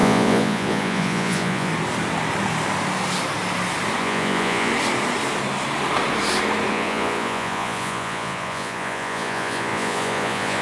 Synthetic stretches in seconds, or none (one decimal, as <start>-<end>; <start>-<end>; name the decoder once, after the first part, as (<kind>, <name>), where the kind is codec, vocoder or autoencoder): 0.0-1.7 (vocoder, Vocos); 4.0-4.7; 6.7-10.6